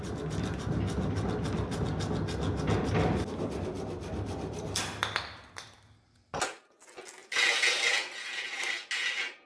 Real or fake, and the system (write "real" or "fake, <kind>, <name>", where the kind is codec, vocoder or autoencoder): real